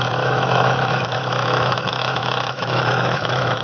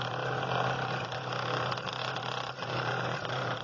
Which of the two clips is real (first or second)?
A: second